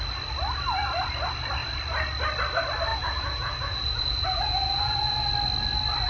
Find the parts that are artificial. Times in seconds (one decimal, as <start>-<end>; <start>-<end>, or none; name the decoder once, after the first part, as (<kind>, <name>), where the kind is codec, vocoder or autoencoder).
2.9-5.3 (vocoder, Vocos)